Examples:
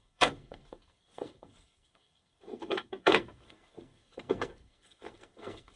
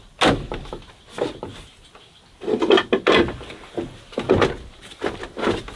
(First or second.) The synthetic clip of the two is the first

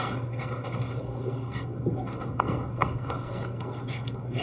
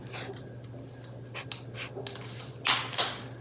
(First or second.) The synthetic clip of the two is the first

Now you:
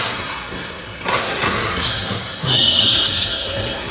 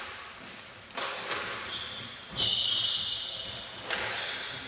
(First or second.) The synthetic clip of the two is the first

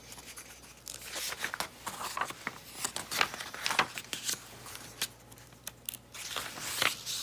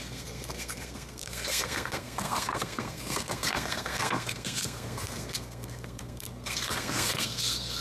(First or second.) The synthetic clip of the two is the second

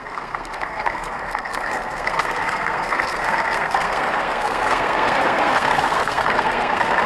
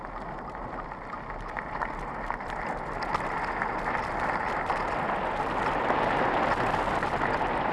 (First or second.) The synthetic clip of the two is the first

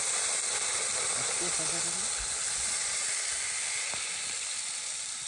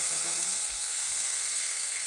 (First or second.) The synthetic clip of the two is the second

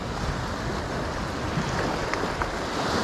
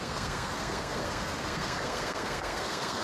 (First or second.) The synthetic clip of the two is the second